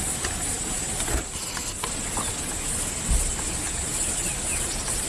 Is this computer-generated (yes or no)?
no